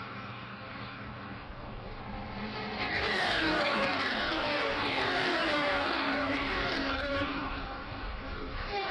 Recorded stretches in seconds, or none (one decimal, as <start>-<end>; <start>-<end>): 2.0-2.9